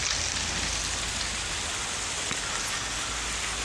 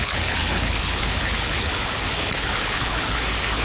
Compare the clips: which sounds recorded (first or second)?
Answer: first